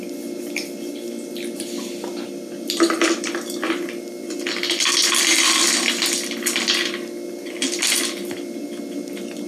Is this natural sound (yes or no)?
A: yes